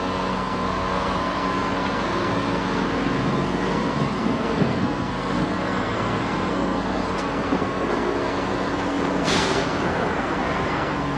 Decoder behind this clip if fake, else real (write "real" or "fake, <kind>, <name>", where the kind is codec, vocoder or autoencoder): fake, codec, SNAC